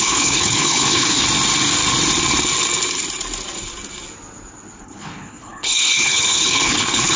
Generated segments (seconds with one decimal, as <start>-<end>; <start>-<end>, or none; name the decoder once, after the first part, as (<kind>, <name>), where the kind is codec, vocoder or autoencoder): 0.0-1.2 (codec, HILCodec); 4.8-7.2